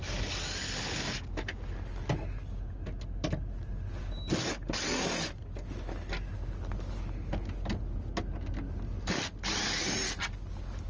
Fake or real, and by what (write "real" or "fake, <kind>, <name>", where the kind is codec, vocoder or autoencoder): real